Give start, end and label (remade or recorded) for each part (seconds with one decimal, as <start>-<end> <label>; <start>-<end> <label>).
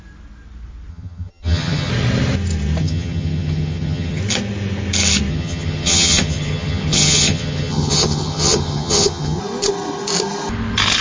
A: 0.0-0.9 recorded; 0.9-1.9 remade; 1.9-2.8 recorded; 2.8-4.2 remade; 4.2-5.3 recorded; 5.3-9.4 remade; 9.4-11.0 recorded